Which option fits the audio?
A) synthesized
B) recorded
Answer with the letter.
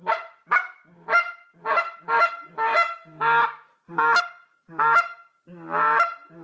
B